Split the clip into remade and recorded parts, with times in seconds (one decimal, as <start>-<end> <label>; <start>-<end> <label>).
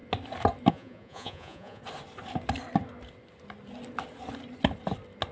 0.0-0.7 recorded; 0.7-1.8 remade; 1.8-5.3 recorded